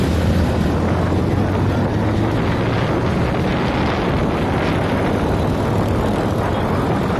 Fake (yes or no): no